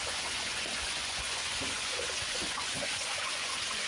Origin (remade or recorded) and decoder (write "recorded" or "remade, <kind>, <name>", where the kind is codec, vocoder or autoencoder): remade, vocoder, Vocos